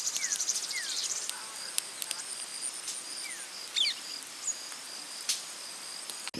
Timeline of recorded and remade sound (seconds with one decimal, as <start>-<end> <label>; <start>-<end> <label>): 0.0-6.4 recorded